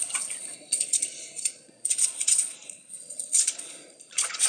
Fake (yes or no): yes